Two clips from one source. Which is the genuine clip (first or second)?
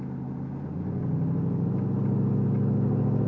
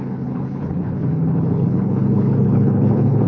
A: first